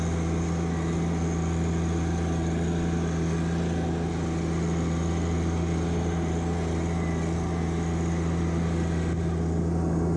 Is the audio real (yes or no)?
yes